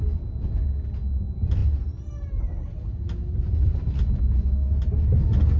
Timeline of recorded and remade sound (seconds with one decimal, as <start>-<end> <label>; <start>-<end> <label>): 0.0-5.6 recorded